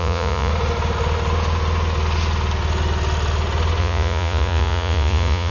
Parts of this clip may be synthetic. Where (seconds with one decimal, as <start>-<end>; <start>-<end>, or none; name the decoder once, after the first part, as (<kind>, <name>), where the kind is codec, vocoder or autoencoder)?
0.0-0.5 (vocoder, Vocos); 3.8-5.5